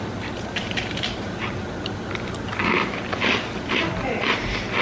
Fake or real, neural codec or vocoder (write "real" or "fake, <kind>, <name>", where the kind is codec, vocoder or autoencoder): real